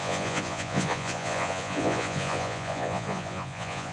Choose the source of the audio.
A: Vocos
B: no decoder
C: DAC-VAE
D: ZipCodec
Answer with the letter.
A